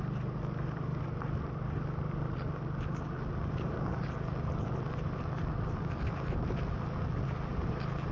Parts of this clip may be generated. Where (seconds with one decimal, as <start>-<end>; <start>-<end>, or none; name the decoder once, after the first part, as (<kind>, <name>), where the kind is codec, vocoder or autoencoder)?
none